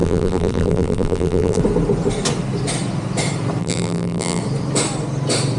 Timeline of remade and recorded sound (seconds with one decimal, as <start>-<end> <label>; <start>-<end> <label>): 0.0-1.6 remade; 1.6-3.6 recorded; 3.6-4.4 remade; 4.4-5.6 recorded